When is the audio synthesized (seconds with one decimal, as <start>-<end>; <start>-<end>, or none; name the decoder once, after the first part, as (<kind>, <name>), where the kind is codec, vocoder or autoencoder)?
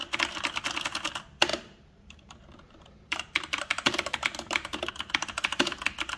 1.5-4.9 (vocoder, BigVGAN v2)